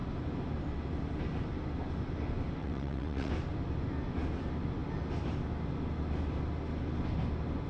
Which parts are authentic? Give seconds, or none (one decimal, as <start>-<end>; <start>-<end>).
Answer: 0.0-2.6; 3.3-7.7